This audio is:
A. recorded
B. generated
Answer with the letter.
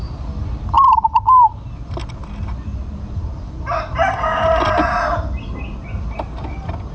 A